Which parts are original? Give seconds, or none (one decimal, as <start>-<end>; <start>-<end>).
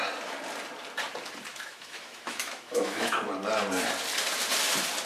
0.0-1.5; 3.3-5.1